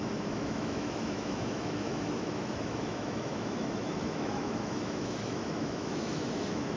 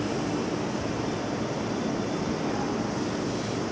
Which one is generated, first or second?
first